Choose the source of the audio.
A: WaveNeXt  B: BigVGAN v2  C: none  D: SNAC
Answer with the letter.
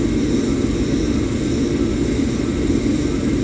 C